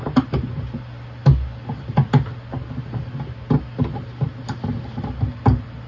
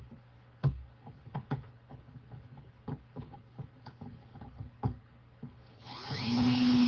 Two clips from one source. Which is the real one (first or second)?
first